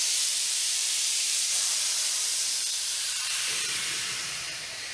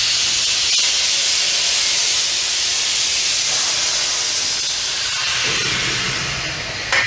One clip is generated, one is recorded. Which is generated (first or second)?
first